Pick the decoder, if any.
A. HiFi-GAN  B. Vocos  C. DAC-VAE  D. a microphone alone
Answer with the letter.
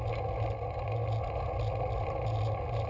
D